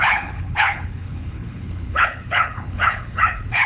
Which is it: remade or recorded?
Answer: remade